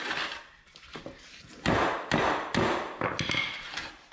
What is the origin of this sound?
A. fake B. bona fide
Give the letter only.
B